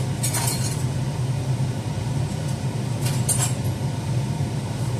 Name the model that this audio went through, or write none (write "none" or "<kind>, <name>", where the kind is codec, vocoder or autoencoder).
none